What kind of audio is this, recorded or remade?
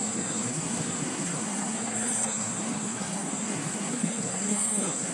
remade